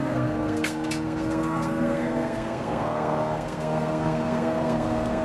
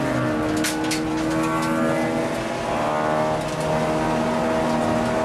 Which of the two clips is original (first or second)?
second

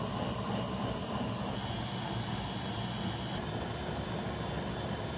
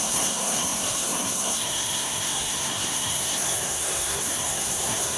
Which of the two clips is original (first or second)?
first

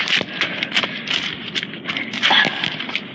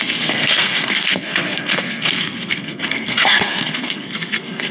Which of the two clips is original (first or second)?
first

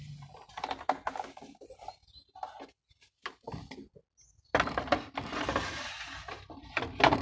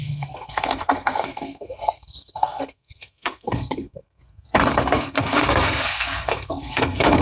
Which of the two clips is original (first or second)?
first